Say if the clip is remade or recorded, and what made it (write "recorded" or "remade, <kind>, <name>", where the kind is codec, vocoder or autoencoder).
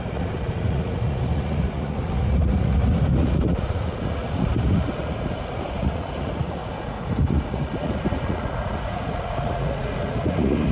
remade, vocoder, Vocos